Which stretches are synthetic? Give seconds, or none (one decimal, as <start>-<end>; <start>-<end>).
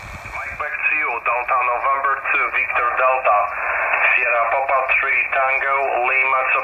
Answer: 4.1-4.7